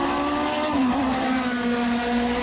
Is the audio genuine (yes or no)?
yes